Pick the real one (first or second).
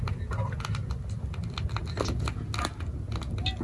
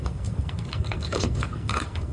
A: first